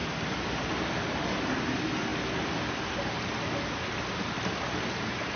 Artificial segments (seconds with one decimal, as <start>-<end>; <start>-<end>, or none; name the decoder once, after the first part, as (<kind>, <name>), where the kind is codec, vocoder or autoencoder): none